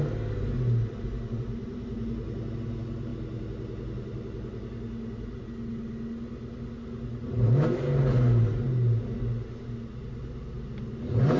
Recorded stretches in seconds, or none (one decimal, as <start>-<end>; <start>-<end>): 0.0-11.4